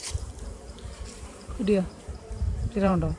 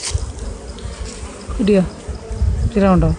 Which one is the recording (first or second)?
second